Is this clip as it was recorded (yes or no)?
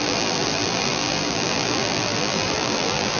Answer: no